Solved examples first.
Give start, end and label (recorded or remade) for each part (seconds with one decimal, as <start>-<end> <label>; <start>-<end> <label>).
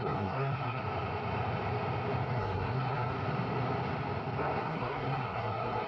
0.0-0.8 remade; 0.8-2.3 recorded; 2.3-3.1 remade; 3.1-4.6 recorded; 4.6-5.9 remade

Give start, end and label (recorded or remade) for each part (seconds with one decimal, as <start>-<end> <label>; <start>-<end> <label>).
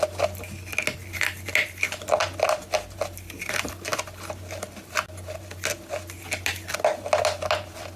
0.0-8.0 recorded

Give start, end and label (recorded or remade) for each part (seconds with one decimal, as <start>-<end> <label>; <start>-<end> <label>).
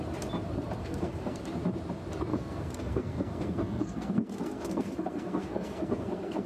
0.0-0.8 recorded; 0.8-1.4 remade; 1.4-2.3 recorded; 2.3-6.5 remade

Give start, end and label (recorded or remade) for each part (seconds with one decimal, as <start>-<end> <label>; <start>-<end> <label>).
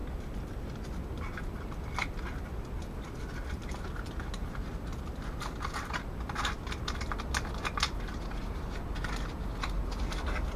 0.0-10.6 recorded